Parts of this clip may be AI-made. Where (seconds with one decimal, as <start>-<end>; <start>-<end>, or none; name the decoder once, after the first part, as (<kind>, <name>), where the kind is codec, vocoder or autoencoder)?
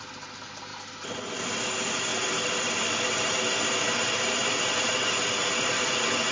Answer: none